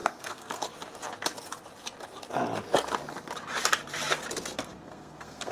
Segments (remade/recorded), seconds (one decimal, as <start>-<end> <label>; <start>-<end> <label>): 0.0-0.7 remade; 0.7-4.7 recorded; 4.7-5.5 remade